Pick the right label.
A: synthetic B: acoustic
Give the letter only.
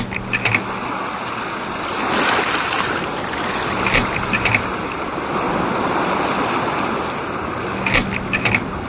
B